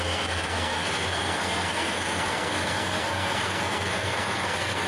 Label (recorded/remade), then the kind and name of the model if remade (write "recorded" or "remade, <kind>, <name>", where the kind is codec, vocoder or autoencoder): remade, codec, SNAC